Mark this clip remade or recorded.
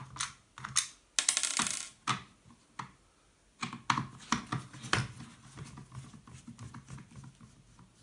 recorded